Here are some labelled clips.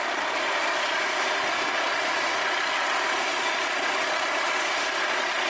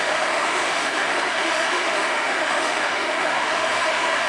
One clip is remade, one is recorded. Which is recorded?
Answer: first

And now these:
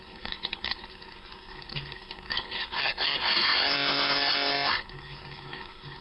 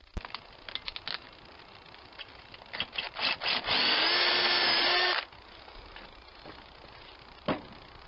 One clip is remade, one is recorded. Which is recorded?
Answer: second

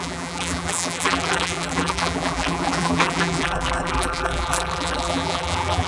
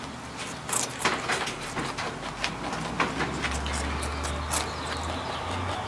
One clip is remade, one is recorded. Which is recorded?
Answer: second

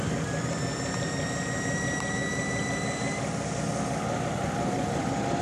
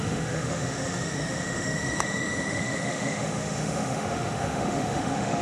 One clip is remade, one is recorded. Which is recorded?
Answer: first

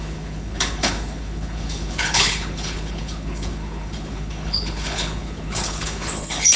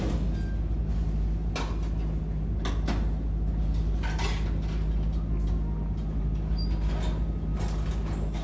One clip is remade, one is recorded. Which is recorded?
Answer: second